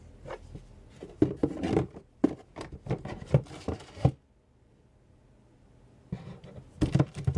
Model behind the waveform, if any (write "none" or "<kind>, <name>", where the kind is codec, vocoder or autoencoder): none